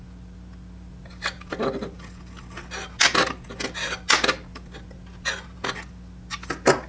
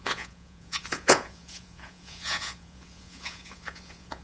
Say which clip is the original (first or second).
first